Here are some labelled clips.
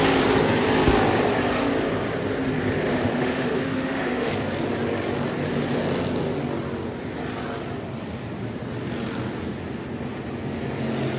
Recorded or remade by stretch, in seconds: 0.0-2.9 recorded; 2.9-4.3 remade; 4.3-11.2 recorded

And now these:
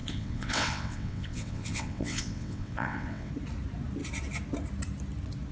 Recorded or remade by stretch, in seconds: 0.0-3.3 remade; 3.3-5.5 recorded

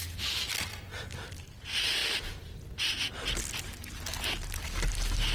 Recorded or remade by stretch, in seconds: 0.0-5.3 recorded

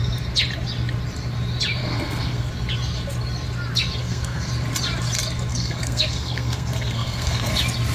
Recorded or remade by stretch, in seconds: 0.0-1.8 recorded; 1.8-2.5 remade; 2.5-4.0 recorded; 4.0-4.5 remade; 4.5-5.5 recorded; 5.5-7.5 remade; 7.5-7.9 recorded

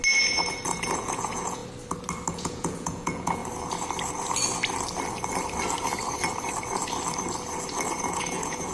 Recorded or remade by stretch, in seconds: 0.0-0.7 recorded; 0.7-1.6 remade; 1.6-2.3 recorded; 2.3-3.4 remade; 3.4-8.0 recorded; 8.0-8.7 remade

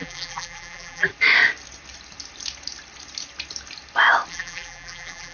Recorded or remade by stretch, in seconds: 0.0-1.1 remade; 1.1-4.3 recorded; 4.3-5.3 remade